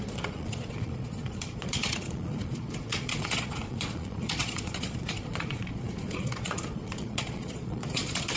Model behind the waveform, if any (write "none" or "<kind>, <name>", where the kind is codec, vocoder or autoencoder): vocoder, Vocos